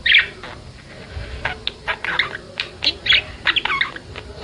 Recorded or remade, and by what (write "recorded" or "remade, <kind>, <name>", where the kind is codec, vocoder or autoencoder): recorded